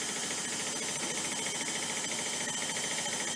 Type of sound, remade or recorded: recorded